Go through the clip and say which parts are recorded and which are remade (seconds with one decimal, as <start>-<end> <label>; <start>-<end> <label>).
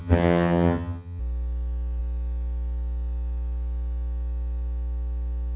0.0-1.2 remade; 1.2-5.6 recorded